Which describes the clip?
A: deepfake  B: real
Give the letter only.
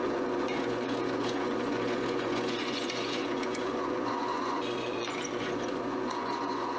A